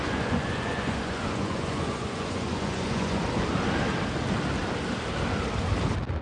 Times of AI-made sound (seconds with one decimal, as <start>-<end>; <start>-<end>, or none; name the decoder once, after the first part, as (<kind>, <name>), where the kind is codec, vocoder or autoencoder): 0.0-3.2 (vocoder, Vocos)